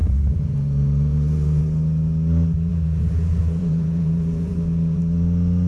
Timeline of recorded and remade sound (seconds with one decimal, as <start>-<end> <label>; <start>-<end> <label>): 0.0-1.6 remade; 1.6-2.7 recorded; 2.7-5.0 remade; 5.0-5.7 recorded